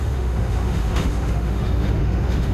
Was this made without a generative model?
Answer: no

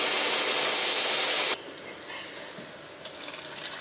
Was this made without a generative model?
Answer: yes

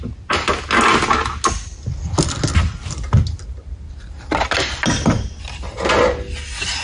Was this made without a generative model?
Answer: yes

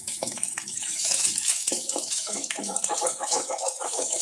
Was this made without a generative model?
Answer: no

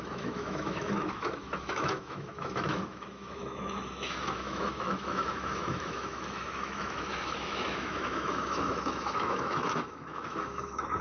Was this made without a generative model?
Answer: no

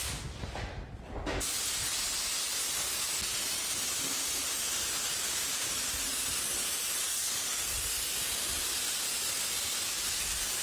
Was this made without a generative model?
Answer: yes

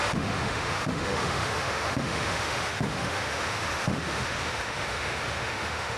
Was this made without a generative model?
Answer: no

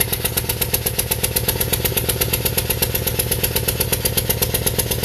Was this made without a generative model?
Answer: yes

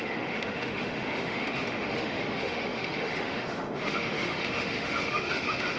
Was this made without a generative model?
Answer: no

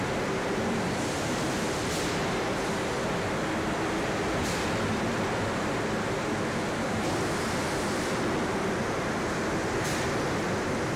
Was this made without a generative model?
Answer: yes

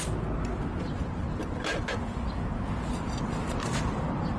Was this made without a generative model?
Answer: yes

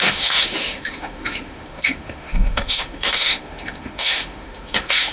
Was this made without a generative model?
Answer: no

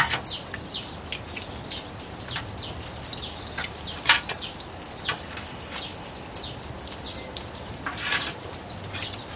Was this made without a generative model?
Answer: yes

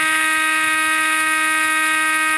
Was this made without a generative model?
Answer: no